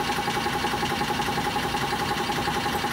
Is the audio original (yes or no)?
yes